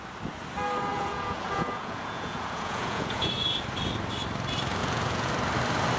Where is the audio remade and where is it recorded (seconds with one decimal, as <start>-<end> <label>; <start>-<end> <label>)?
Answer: 0.0-0.9 recorded; 0.9-3.3 remade; 3.3-4.8 recorded; 4.8-5.3 remade; 5.3-6.0 recorded